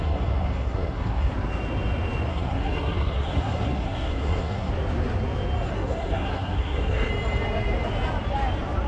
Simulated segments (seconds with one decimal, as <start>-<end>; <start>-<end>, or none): 0.0-1.3; 2.3-4.7; 5.7-7.1